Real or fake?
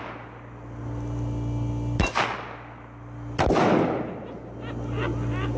real